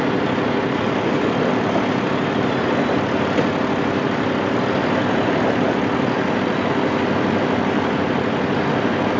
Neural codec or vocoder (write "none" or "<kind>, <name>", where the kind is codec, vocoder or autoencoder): none